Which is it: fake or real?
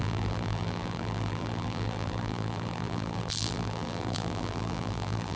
fake